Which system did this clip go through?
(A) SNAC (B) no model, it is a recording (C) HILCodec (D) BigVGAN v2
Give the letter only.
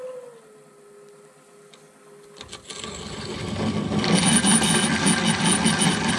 B